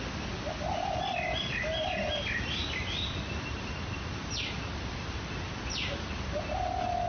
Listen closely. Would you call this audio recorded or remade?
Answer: recorded